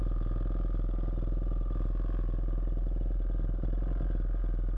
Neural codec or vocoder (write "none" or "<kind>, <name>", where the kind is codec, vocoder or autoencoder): none